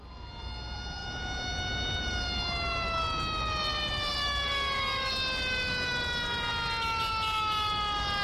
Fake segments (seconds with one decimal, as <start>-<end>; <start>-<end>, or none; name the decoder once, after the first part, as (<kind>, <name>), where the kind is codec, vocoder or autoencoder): none

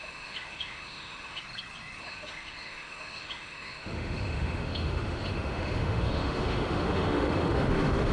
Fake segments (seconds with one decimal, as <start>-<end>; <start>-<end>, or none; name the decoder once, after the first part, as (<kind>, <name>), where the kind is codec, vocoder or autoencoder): 0.0-1.4 (autoencoder, DAC-VAE); 2.0-8.1